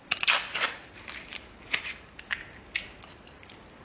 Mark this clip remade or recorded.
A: remade